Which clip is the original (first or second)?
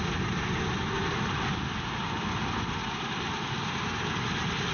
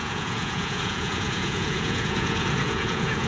first